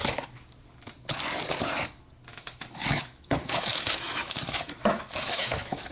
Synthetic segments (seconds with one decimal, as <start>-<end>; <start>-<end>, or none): 2.3-5.9